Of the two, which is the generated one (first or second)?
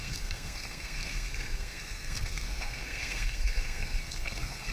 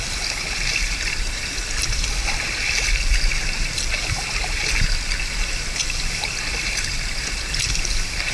first